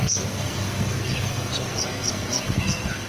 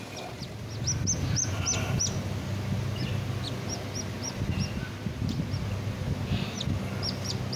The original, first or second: second